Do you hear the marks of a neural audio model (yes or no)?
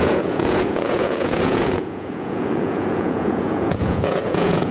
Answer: yes